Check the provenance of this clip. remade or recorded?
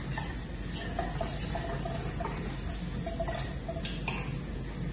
recorded